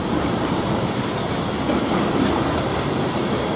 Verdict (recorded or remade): recorded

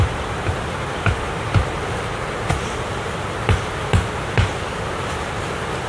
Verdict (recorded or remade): recorded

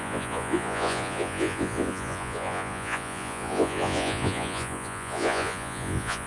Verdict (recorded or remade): remade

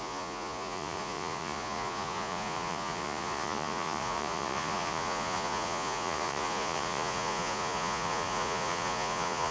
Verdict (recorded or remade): remade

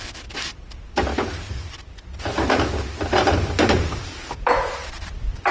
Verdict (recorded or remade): recorded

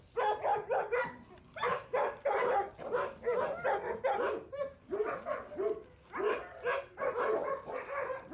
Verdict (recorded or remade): recorded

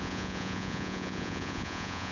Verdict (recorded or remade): remade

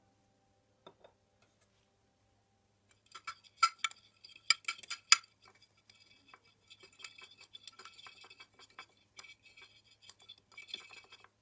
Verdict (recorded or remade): recorded